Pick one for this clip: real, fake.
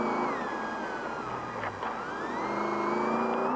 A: real